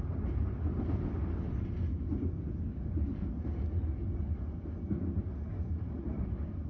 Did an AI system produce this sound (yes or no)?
no